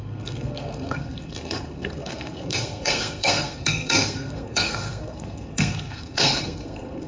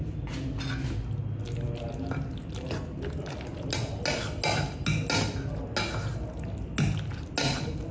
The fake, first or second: first